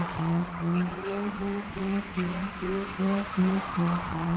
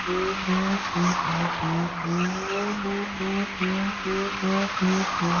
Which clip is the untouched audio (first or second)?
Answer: second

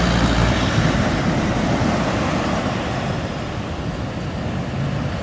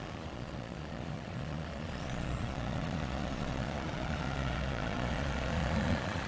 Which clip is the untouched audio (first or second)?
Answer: first